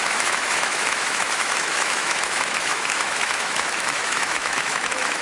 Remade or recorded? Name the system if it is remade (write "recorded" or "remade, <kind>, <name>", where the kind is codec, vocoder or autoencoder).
remade, autoencoder, DAC-VAE